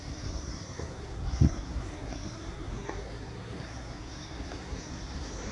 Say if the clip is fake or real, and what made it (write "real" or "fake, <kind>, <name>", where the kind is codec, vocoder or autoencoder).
fake, codec, SNAC